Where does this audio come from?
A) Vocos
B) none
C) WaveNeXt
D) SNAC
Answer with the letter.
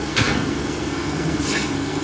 D